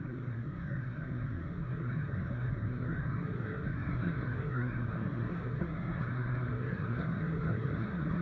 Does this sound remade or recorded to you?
remade